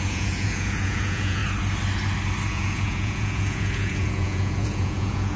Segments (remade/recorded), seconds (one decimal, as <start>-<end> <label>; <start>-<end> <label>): 0.0-1.4 remade; 1.4-2.5 recorded; 2.5-5.4 remade